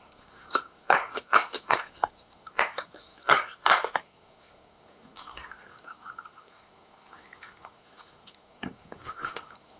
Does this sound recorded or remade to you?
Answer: remade